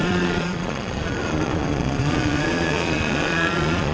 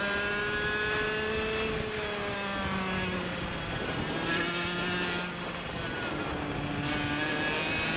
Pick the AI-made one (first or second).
first